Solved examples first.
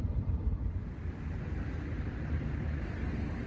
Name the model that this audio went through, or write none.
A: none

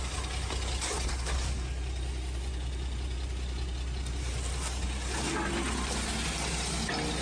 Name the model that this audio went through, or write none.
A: none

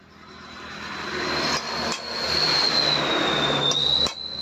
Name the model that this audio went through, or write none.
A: none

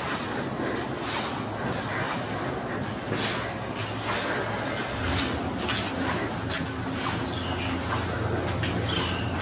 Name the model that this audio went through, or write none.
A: none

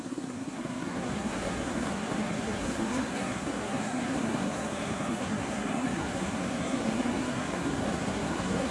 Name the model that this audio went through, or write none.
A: codec, SNAC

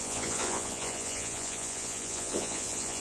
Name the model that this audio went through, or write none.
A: vocoder, Vocos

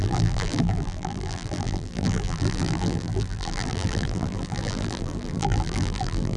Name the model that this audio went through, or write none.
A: vocoder, BigVGAN v2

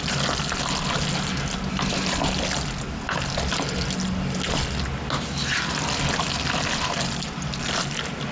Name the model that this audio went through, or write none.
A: none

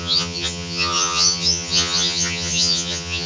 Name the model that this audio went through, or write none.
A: vocoder, HiFi-GAN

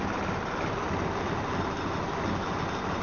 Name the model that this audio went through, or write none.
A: none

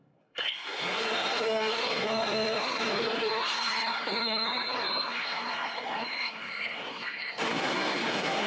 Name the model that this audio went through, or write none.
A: codec, SNAC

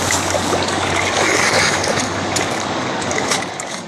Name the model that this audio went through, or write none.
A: codec, DAC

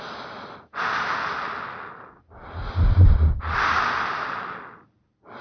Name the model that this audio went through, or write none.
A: none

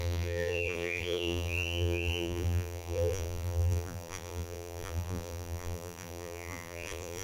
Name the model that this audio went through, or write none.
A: vocoder, BigVGAN v2